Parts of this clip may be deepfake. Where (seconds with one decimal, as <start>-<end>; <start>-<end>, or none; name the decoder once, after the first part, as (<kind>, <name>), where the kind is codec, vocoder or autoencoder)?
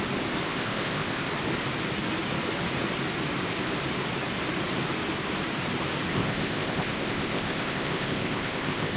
0.5-1.3 (codec, ZipCodec); 6.1-9.0